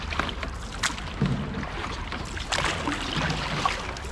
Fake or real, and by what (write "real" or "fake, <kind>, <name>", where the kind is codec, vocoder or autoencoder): real